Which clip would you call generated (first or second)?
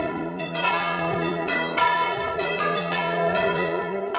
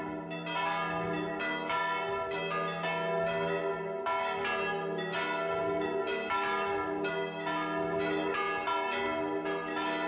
first